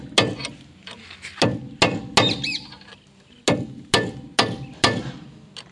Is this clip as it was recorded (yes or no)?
yes